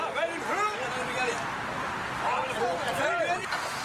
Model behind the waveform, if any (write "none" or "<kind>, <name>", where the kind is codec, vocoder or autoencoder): none